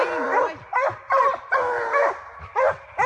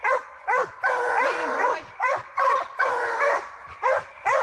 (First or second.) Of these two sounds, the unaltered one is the first